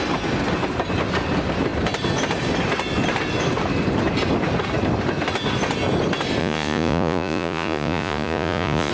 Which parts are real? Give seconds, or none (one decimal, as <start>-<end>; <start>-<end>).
0.0-6.4